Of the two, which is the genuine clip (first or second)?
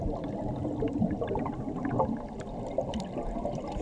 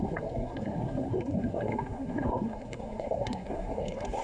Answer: first